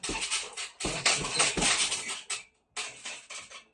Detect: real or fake real